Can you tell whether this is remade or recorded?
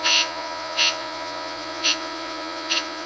remade